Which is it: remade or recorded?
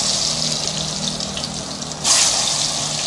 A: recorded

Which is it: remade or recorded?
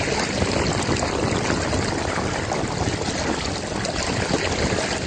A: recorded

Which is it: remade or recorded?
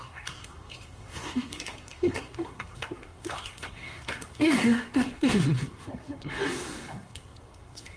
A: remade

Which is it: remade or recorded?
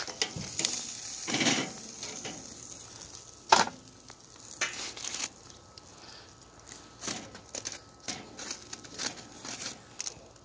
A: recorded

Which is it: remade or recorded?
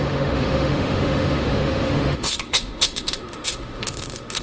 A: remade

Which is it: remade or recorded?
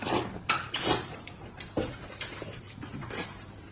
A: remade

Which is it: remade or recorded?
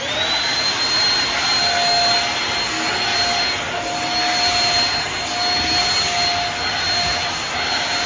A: recorded